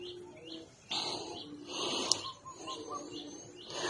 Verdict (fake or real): real